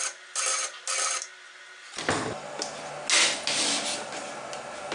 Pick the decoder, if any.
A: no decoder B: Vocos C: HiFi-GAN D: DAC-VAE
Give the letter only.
A